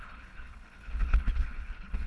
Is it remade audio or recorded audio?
remade